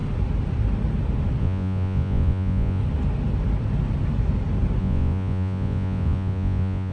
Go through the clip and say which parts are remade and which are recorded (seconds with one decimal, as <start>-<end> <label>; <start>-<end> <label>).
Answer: 0.0-1.4 recorded; 1.4-2.8 remade; 2.8-4.8 recorded; 4.8-6.9 remade